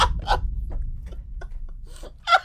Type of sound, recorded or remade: remade